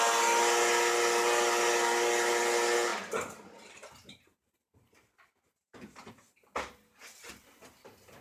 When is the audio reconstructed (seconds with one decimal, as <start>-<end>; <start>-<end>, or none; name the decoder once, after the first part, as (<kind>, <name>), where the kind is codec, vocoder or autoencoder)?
2.9-6.1 (vocoder, BigVGAN v2)